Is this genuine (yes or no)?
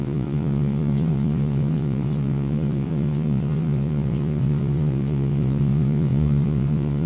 no